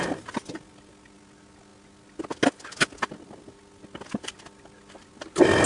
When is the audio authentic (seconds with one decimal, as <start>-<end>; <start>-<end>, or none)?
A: 0.0-5.7

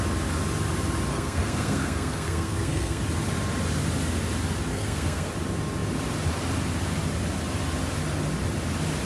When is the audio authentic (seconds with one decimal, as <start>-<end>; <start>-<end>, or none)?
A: 0.0-1.1; 3.0-4.7; 5.3-9.1

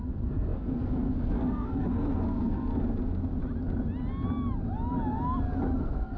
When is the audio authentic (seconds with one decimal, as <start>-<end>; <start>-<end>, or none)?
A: 2.7-5.8

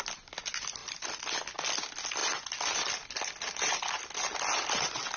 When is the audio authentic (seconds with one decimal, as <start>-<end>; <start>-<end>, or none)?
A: 0.0-5.2

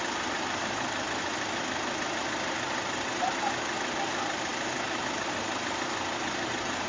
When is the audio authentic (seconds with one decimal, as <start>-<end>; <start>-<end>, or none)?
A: 0.0-6.9